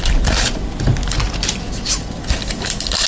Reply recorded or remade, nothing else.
recorded